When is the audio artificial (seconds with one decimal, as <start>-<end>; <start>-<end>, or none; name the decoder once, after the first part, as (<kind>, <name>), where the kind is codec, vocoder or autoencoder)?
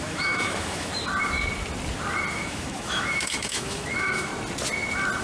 0.0-0.9 (autoencoder, DAC-VAE); 2.3-4.3